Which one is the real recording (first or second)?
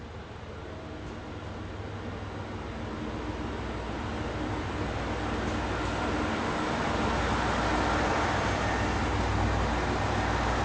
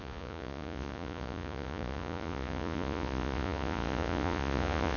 first